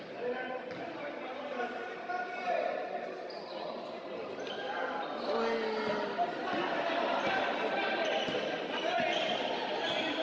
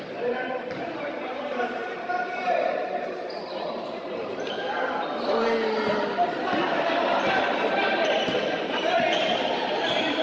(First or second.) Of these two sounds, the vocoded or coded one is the second